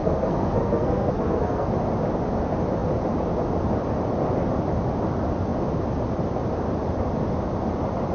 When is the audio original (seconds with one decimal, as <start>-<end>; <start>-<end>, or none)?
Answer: 1.7-8.1